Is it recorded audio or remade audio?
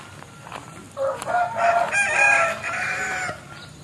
recorded